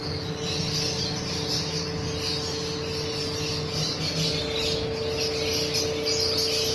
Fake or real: real